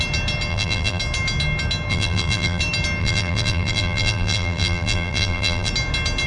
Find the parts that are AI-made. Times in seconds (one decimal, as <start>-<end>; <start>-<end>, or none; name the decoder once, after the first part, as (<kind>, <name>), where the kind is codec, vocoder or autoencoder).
0.5-1.0 (vocoder, BigVGAN v2); 1.9-2.6; 3.0-5.7